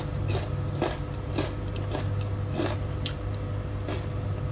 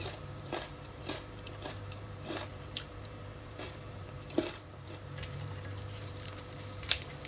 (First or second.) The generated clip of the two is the second